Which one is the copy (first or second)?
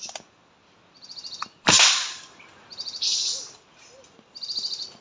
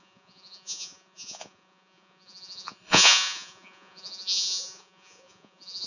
second